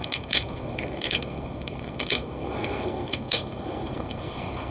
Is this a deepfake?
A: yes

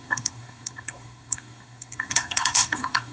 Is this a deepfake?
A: yes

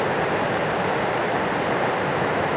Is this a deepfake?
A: no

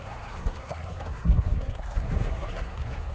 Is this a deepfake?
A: yes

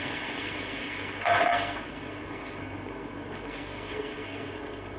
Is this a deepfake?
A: yes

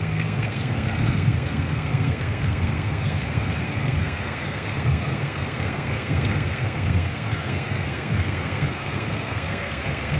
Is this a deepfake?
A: yes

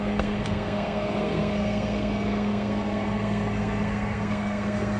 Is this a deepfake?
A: yes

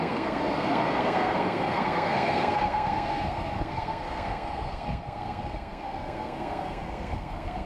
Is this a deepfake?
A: yes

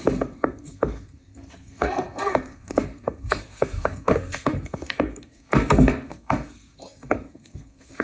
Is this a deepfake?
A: yes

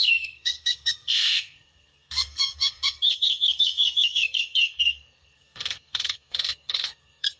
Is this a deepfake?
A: yes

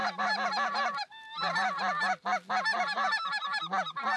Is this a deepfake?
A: no